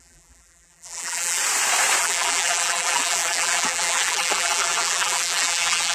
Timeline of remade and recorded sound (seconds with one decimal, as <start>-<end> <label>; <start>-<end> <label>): 0.0-1.4 remade; 1.4-2.0 recorded; 2.0-5.9 remade